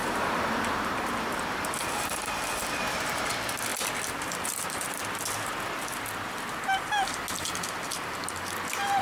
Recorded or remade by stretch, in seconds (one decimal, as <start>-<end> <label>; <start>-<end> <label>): 0.0-0.9 remade; 0.9-1.8 recorded; 1.8-3.3 remade; 3.3-9.0 recorded

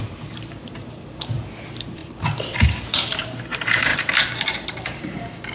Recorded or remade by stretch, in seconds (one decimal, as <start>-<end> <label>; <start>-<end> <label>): 0.0-5.5 remade